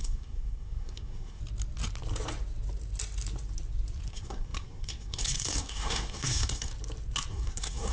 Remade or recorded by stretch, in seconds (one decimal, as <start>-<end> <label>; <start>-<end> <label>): 0.0-1.4 remade; 1.4-4.1 recorded; 4.1-6.7 remade; 6.7-7.3 recorded; 7.3-7.9 remade